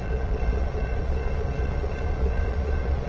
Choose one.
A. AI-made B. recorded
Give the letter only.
A